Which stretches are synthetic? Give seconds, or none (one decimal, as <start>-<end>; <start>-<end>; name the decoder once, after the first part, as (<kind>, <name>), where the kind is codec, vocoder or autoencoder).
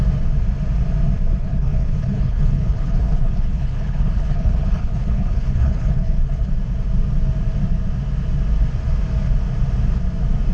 1.4-6.5 (codec, HILCodec)